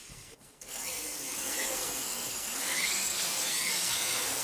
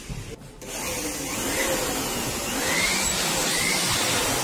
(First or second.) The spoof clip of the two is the first